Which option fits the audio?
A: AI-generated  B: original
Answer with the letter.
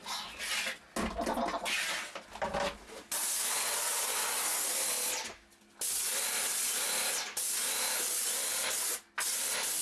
B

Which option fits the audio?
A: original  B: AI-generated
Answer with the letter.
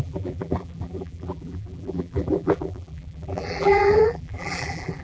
B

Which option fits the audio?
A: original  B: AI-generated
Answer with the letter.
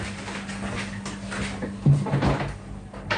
A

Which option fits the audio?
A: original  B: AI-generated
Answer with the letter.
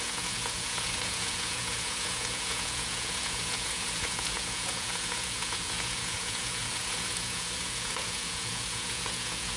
B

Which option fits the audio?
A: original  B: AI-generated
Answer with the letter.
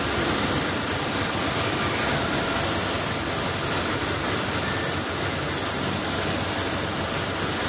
A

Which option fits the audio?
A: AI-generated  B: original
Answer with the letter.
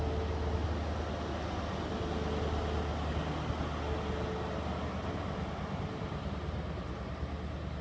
B